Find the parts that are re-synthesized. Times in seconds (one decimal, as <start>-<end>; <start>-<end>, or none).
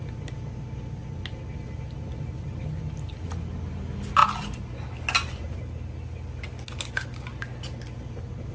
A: none